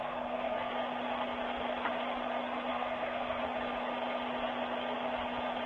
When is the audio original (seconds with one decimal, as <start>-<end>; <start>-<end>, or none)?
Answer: 0.7-2.7; 3.4-5.7